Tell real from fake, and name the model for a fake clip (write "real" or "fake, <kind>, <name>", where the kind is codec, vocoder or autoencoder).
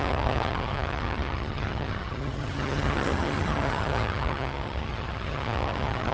fake, vocoder, HiFi-GAN